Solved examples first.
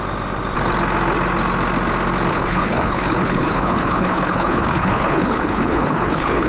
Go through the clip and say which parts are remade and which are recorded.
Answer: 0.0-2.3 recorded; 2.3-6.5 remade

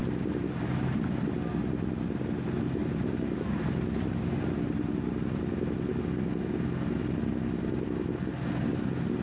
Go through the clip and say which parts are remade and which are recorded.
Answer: 0.0-1.3 remade; 1.3-2.8 recorded; 2.8-5.4 remade; 5.4-9.2 recorded